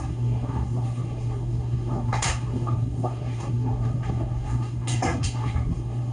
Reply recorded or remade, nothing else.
remade